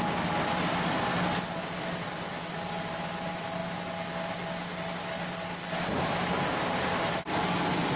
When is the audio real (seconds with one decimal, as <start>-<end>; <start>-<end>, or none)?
0.0-8.0